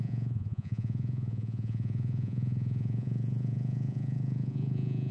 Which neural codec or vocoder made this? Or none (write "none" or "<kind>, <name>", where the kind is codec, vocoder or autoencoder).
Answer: vocoder, Vocos